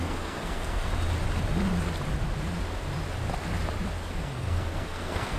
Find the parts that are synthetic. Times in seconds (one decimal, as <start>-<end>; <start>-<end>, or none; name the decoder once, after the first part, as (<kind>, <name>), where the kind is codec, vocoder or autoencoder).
0.0-0.9 (codec, SNAC); 4.1-5.4